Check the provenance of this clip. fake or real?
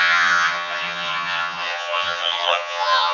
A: fake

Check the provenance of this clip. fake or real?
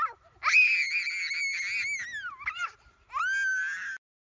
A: real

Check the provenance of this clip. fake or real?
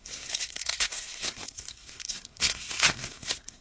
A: fake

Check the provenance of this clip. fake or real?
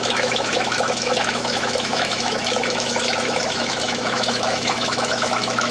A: fake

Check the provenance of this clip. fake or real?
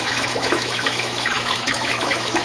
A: fake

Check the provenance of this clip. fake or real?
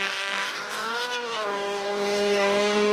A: fake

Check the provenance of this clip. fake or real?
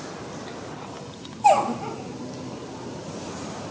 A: real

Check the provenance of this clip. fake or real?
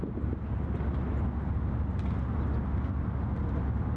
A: real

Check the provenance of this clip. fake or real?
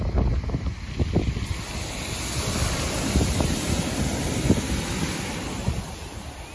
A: real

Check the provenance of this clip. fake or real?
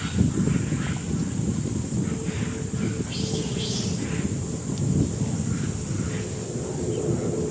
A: real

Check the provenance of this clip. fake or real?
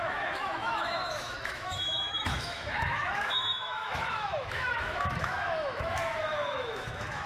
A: fake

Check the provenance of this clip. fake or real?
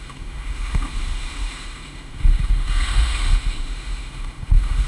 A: fake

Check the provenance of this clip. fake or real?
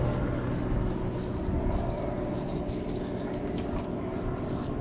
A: real